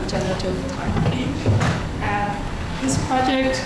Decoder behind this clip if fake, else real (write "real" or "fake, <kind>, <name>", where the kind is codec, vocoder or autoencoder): fake, codec, DAC